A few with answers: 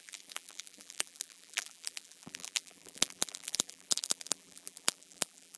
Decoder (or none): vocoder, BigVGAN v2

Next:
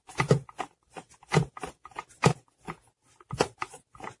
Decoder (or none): none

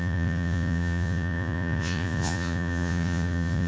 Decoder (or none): vocoder, Vocos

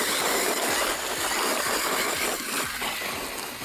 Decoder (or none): none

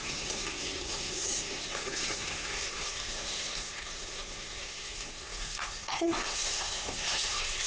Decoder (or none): codec, SNAC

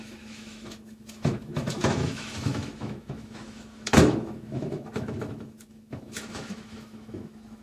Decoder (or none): autoencoder, DAC-VAE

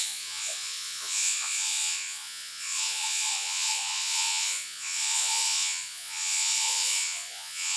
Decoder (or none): vocoder, Vocos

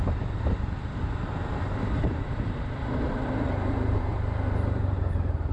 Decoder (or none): vocoder, BigVGAN v2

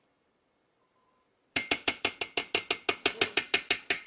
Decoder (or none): none